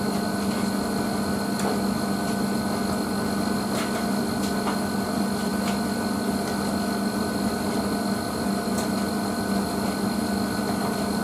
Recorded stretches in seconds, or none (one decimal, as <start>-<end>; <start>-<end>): 0.0-11.2